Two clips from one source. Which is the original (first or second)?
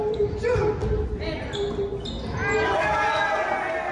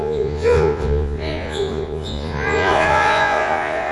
first